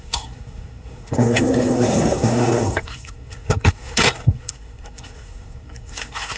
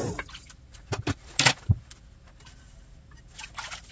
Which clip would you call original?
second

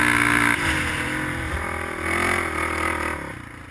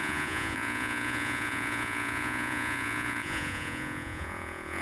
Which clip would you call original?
first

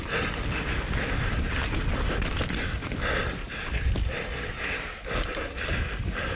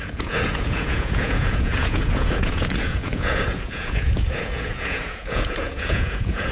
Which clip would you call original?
first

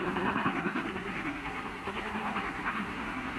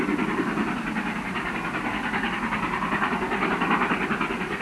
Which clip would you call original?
second